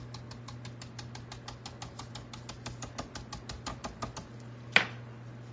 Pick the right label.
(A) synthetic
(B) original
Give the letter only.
B